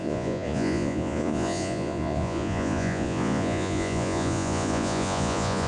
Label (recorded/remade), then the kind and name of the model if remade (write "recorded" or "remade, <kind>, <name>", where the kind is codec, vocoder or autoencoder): remade, vocoder, Vocos